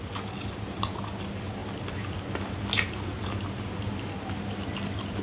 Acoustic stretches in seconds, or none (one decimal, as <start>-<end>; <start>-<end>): 0.0-5.2